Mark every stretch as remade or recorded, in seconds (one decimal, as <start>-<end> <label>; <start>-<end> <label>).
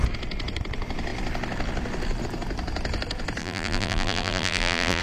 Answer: 0.0-3.4 recorded; 3.4-5.0 remade